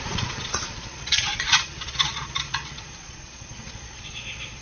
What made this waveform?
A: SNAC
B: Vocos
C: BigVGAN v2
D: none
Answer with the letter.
B